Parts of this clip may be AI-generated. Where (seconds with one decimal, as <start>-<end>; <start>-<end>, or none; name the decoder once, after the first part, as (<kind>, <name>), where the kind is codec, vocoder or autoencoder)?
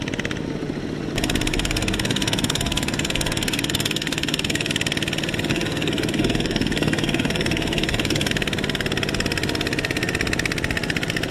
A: 1.5-4.7 (codec, SNAC); 5.5-8.3